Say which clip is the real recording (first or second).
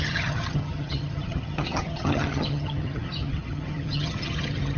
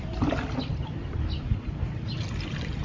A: second